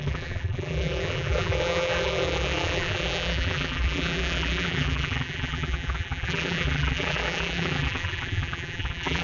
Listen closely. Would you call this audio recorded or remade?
remade